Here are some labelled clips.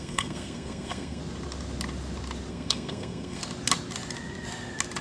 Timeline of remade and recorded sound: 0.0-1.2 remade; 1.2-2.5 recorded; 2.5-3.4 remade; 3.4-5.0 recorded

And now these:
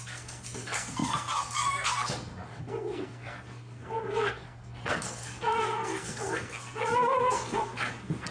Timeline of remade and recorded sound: 0.0-8.3 remade